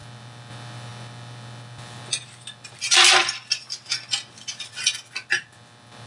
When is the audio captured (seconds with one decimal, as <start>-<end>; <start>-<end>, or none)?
0.0-6.1